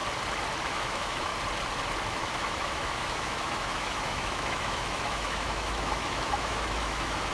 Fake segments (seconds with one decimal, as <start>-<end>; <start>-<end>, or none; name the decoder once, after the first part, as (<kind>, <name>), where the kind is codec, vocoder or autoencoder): 0.6-1.3 (autoencoder, DAC-VAE); 2.1-7.3